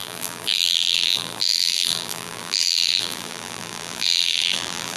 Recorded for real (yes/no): no